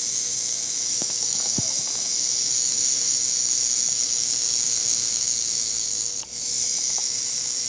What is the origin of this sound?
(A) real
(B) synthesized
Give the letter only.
B